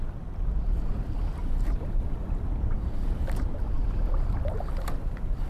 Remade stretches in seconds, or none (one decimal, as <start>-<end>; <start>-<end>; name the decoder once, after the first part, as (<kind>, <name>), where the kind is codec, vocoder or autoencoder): 1.4-4.0 (vocoder, BigVGAN v2)